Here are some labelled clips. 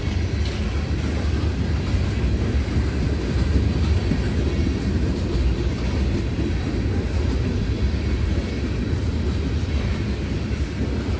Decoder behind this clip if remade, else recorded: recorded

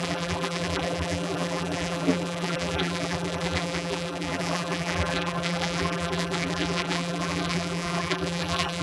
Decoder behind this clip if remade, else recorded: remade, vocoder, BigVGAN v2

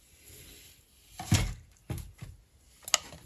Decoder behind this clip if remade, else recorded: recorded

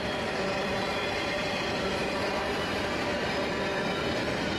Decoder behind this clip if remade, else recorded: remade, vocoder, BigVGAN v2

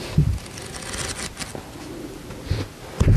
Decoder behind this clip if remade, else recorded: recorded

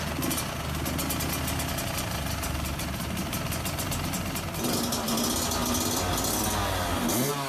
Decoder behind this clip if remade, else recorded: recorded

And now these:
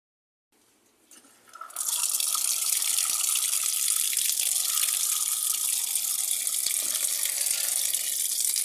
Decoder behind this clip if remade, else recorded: recorded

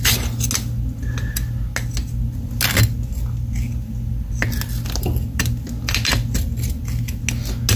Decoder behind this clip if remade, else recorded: recorded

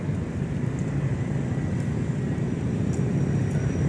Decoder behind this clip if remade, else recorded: recorded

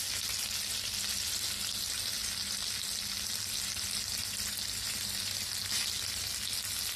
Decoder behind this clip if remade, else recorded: recorded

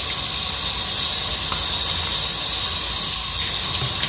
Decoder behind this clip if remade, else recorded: recorded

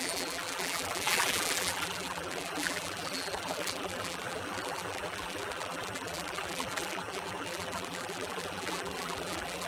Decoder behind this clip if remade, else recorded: remade, vocoder, BigVGAN v2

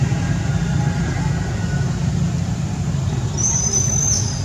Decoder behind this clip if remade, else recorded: remade, vocoder, BigVGAN v2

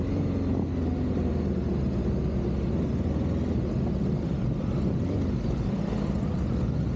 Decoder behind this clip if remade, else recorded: recorded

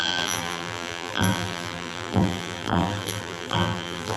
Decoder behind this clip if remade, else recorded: remade, vocoder, BigVGAN v2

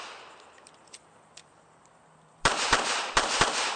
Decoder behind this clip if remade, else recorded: remade, vocoder, BigVGAN v2